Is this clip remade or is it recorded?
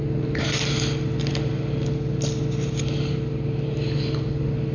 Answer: recorded